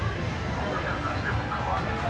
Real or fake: real